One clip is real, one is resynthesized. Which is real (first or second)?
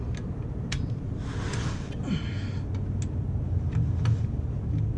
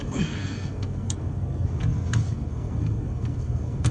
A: first